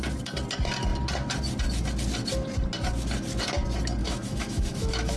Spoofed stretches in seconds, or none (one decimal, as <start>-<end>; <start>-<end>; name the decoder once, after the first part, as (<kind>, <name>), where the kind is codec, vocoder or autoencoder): 4.0-5.2 (autoencoder, DAC-VAE)